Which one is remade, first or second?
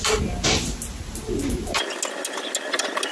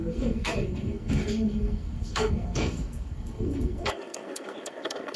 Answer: second